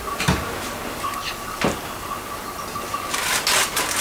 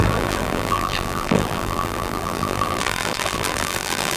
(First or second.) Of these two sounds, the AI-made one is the second